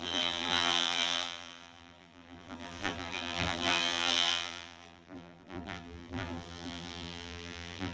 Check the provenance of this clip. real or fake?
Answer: fake